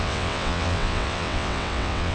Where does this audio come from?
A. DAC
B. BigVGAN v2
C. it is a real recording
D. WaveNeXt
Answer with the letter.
D